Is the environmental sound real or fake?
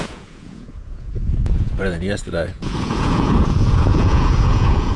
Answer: fake